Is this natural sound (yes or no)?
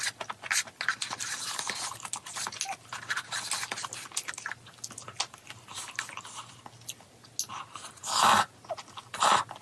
yes